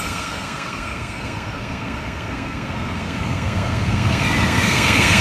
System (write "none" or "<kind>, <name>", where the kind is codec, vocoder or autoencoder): codec, SNAC